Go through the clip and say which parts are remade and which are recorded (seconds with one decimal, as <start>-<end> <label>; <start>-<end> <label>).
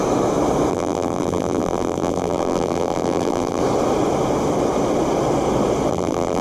0.0-0.7 recorded; 0.7-3.6 remade; 3.6-5.9 recorded; 5.9-6.4 remade